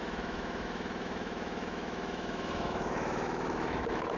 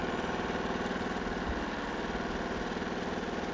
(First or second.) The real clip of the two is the second